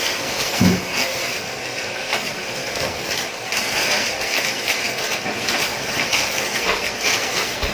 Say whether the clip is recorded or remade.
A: remade